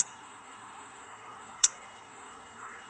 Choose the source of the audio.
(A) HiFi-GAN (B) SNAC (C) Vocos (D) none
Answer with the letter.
B